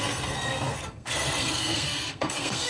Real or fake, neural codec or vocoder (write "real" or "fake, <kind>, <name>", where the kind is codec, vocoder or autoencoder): fake, codec, SNAC